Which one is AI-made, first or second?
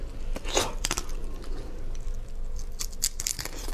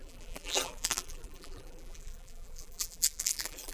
second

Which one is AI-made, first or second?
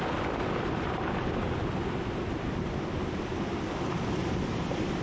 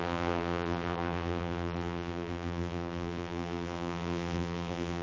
second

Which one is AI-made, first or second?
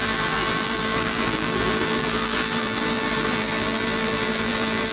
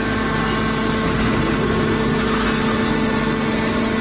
first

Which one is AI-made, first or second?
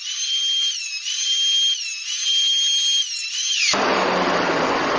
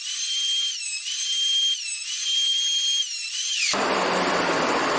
second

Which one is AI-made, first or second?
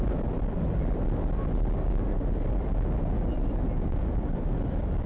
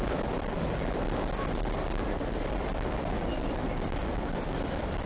second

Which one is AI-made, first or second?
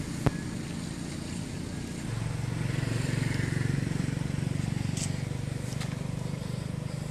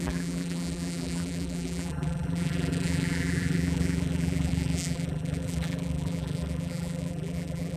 second